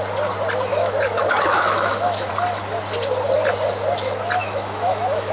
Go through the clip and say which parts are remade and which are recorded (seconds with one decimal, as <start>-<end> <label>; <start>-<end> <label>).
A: 0.0-0.7 recorded; 0.7-2.3 remade; 2.3-4.4 recorded; 4.4-5.3 remade